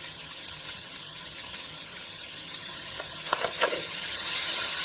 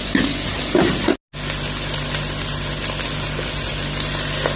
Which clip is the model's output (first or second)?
first